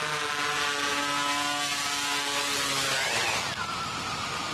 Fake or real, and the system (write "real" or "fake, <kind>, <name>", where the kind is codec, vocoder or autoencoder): real